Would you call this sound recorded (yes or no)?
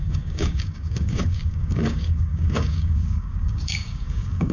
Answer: no